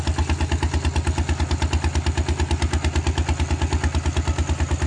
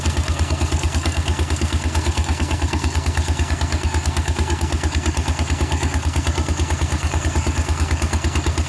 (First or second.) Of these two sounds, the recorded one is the first